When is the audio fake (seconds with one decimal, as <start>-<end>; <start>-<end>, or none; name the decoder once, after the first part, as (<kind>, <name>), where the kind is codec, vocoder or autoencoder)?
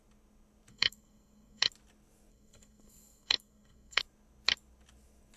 0.7-1.7 (codec, SNAC); 2.3-4.0